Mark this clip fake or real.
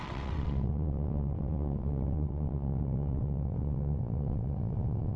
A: fake